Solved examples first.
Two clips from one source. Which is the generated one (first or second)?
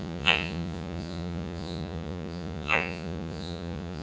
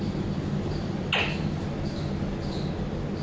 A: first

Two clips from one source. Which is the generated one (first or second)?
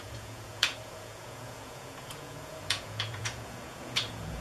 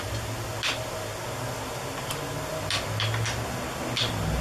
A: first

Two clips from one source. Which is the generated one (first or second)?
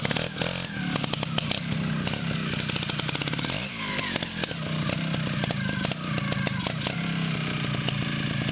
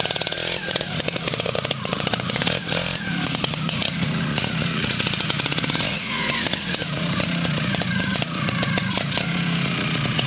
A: second